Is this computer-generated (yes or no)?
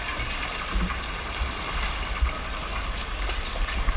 no